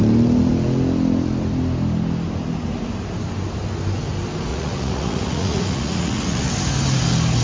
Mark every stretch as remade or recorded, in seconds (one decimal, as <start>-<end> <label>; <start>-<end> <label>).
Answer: 0.0-4.5 recorded; 4.5-6.5 remade; 6.5-7.4 recorded